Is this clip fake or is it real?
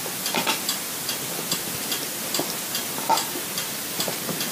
real